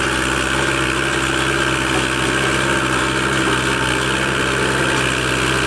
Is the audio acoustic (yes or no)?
yes